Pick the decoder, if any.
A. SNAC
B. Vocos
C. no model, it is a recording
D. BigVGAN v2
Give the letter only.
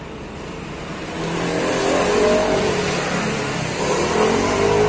C